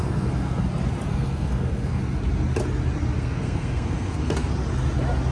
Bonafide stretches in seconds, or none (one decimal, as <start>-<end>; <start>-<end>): 0.6-1.1; 2.0-3.2; 4.5-5.3